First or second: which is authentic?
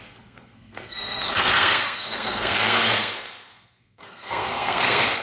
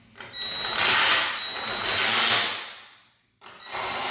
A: second